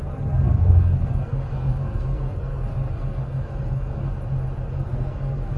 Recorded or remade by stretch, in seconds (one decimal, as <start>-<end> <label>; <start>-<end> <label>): 0.0-4.1 remade; 4.1-4.7 recorded; 4.7-5.6 remade